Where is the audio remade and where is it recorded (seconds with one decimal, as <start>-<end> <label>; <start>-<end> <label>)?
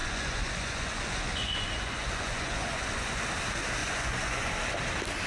0.0-3.2 remade; 3.2-3.8 recorded; 3.8-4.5 remade; 4.5-5.3 recorded